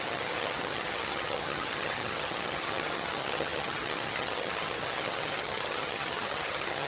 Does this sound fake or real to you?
fake